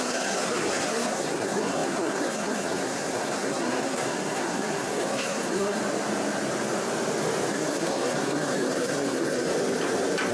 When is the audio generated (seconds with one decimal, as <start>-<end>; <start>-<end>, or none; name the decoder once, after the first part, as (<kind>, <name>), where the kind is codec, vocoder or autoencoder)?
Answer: 0.0-5.8 (codec, SNAC); 7.5-9.5